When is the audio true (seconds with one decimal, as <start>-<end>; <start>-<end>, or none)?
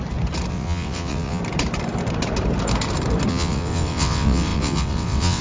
0.0-0.5; 1.4-3.3